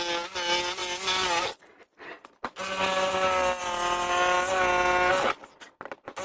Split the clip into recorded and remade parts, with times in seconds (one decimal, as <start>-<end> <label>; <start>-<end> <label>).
0.0-6.2 recorded